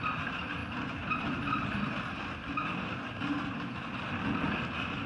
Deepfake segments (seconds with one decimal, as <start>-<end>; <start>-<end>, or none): none

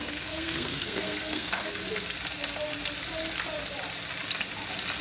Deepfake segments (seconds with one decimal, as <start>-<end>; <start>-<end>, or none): 0.0-1.8

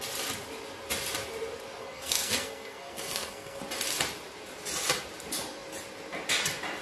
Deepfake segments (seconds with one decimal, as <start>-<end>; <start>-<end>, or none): 1.8-3.6

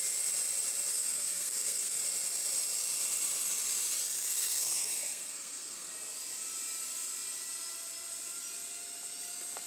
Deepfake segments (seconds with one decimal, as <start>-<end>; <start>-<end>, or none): 0.9-2.0; 4.3-5.9

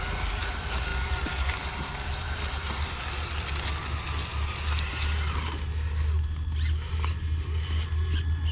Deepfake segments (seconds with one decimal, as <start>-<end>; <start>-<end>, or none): none

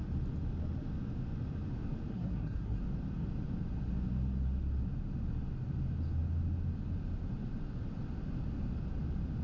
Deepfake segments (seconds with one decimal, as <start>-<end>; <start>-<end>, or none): 2.1-2.8

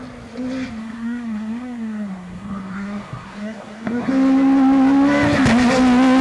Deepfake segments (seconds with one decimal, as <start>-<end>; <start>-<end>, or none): 0.8-4.1